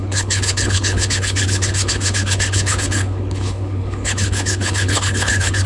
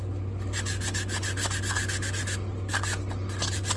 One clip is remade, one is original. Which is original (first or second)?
second